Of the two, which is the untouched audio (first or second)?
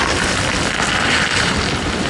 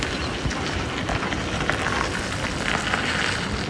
second